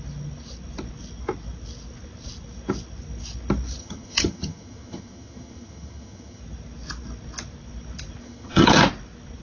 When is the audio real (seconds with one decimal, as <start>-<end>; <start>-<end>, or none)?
0.0-3.8; 6.4-8.2; 8.8-9.4